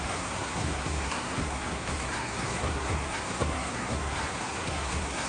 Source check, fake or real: fake